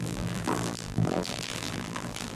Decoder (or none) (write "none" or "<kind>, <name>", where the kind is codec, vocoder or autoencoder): vocoder, BigVGAN v2